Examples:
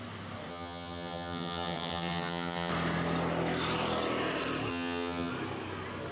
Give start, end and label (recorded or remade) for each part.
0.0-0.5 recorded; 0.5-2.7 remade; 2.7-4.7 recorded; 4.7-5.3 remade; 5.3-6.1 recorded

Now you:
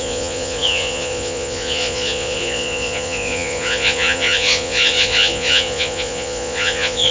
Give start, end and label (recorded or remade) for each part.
0.0-7.1 remade

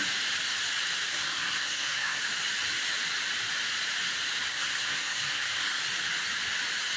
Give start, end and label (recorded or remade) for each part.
0.0-1.1 recorded; 1.1-2.2 remade; 2.2-4.5 recorded; 4.5-5.8 remade; 5.8-7.0 recorded